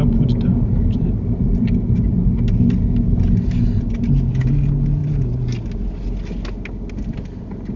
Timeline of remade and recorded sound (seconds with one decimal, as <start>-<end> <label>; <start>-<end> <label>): 0.0-7.8 recorded

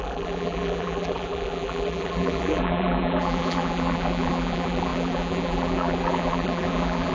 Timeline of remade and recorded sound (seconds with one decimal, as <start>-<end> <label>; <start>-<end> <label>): 0.0-7.1 remade